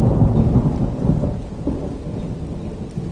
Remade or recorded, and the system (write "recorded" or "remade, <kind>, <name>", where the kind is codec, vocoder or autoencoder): recorded